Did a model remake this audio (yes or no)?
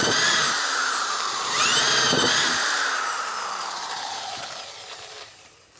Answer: yes